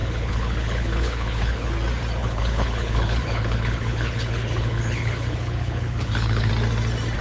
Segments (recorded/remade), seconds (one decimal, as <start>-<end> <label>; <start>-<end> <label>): 0.0-1.7 remade; 1.7-2.2 recorded; 2.2-6.5 remade; 6.5-7.2 recorded